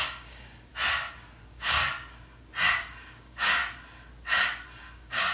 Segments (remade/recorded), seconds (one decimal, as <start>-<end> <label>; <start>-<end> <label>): 0.0-0.7 remade; 0.7-1.4 recorded; 1.4-1.8 remade; 1.8-2.7 recorded; 2.7-3.6 remade; 3.6-4.8 recorded; 4.8-5.3 remade